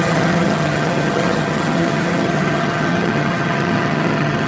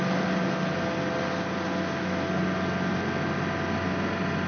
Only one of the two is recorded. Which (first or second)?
second